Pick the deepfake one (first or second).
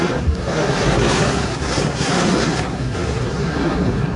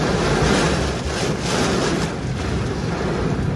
first